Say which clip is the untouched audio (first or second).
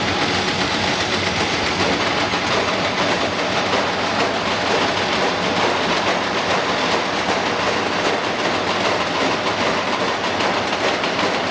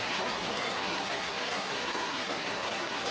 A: first